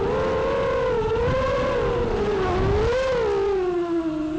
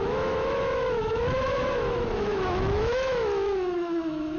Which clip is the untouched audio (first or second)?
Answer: first